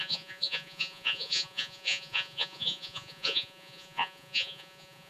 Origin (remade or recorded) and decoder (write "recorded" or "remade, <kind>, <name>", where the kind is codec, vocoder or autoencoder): remade, vocoder, Vocos